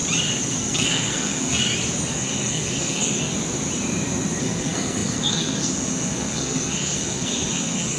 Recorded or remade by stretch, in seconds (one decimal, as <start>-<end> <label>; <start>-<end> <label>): 0.0-0.5 recorded; 0.5-1.6 remade; 1.6-2.1 recorded; 2.1-3.3 remade; 3.3-4.4 recorded; 4.4-8.0 remade